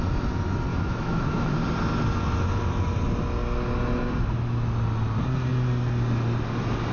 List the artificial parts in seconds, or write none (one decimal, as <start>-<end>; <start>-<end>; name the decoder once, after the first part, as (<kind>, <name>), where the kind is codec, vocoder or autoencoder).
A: 0.7-1.5 (autoencoder, DAC-VAE)